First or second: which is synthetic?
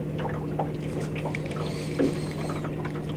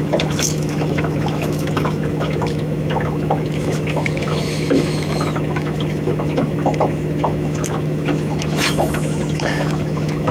second